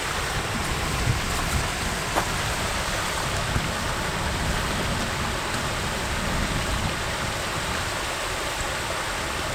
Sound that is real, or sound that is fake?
real